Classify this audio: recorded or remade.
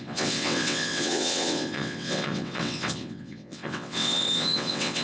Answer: remade